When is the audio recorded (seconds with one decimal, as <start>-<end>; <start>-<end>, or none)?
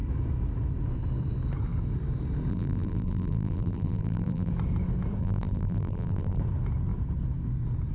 0.0-2.5; 4.5-5.2; 6.4-7.9